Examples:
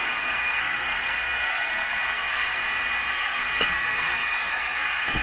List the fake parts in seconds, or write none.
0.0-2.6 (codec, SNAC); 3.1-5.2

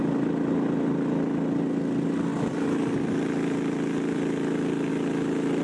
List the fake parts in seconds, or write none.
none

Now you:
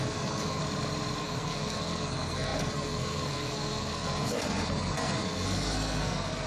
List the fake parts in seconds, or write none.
0.0-0.6 (codec, SNAC); 1.2-6.5